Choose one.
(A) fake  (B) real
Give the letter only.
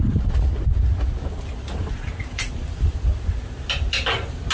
B